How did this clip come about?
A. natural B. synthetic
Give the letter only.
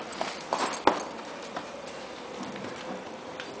A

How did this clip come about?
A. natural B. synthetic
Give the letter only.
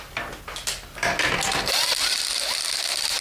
A